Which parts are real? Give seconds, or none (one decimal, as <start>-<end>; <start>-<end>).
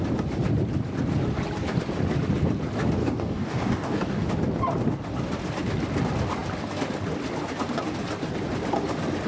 0.0-3.0; 4.3-9.3